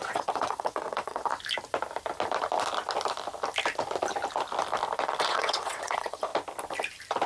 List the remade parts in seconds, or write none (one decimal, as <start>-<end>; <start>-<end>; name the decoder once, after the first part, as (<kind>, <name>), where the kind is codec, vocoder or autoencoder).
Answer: 0.0-1.3 (vocoder, WaveNeXt); 5.2-6.3